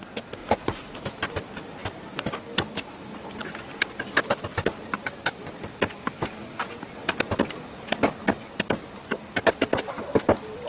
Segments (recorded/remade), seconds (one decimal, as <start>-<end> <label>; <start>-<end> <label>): 0.0-0.4 recorded; 0.4-1.0 remade; 1.0-10.7 recorded